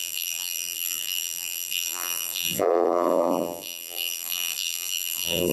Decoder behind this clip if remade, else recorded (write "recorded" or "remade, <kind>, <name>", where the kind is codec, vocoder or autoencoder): remade, vocoder, BigVGAN v2